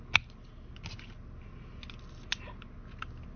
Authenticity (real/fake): real